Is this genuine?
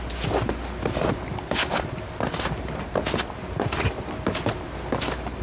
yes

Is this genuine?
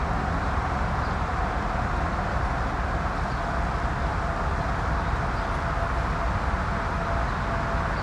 yes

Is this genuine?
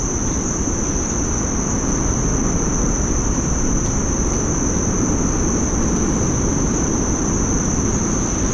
yes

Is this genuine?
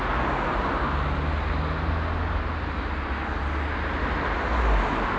yes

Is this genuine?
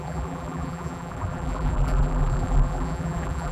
no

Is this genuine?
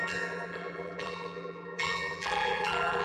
no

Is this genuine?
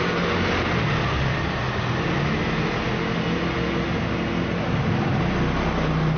yes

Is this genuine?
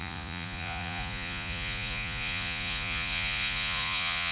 no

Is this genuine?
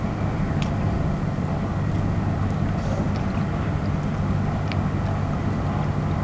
yes